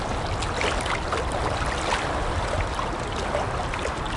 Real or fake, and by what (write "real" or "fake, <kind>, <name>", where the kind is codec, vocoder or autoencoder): real